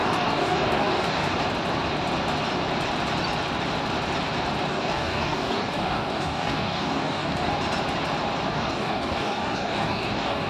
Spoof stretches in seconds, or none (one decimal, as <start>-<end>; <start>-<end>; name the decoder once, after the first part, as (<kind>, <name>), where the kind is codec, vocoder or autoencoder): 0.0-1.3 (codec, DAC); 4.7-7.5; 8.5-10.5